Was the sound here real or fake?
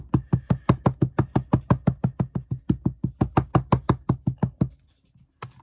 real